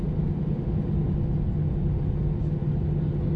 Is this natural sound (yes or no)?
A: yes